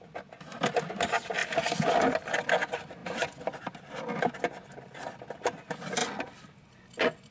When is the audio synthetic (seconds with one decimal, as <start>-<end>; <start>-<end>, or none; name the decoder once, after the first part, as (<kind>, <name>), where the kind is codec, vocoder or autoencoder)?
none